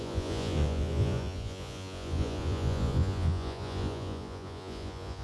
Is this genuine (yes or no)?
no